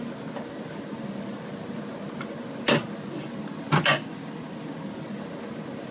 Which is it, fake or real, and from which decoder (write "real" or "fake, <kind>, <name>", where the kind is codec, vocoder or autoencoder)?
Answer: real